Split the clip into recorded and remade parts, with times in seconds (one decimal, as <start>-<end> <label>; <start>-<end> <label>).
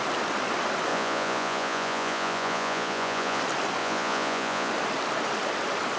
0.0-0.9 recorded; 0.9-3.4 remade; 3.4-3.8 recorded; 3.8-4.7 remade; 4.7-6.0 recorded